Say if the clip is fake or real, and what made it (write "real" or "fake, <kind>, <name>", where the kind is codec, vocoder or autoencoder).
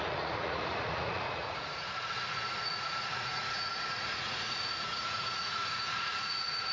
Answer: fake, vocoder, Vocos